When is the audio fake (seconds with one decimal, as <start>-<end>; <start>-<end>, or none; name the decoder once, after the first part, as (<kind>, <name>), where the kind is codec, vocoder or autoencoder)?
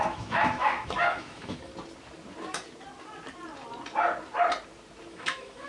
0.0-1.7 (autoencoder, DAC-VAE); 5.1-5.7